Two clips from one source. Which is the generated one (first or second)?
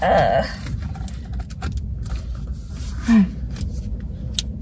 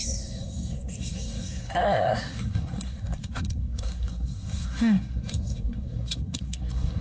second